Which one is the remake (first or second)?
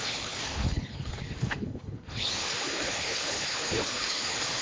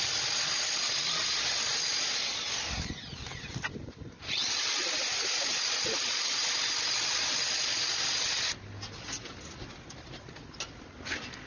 first